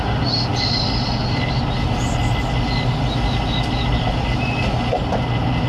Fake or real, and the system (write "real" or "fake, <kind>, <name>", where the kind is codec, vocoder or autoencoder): real